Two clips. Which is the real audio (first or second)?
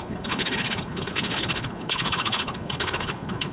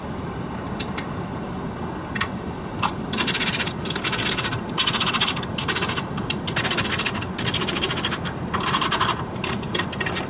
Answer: second